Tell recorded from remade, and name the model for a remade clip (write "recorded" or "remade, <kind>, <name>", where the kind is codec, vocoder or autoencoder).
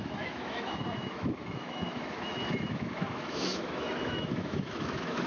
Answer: remade, autoencoder, DAC-VAE